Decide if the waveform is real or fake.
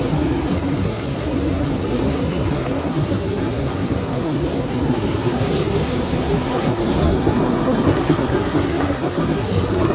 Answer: fake